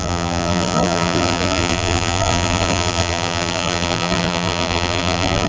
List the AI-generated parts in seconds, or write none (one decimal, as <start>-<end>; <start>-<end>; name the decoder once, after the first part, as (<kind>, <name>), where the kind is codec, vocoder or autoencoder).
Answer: 0.0-5.5 (vocoder, BigVGAN v2)